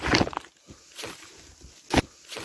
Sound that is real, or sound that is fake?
real